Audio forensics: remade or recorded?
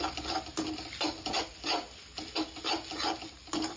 recorded